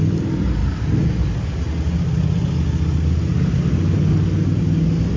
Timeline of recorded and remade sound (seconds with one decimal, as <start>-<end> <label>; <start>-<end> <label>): 0.0-5.2 recorded

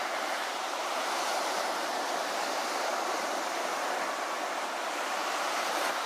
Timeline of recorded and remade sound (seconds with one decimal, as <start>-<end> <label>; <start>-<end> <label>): 0.0-2.2 remade; 2.2-4.8 recorded; 4.8-6.1 remade

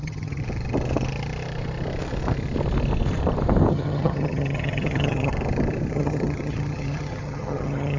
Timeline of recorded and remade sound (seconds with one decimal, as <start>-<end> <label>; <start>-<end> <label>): 0.0-0.4 remade; 0.4-3.7 recorded; 3.7-5.3 remade; 5.3-5.9 recorded; 5.9-8.0 remade